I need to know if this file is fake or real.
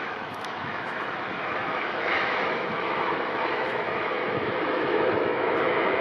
fake